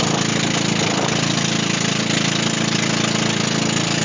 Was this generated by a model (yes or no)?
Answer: no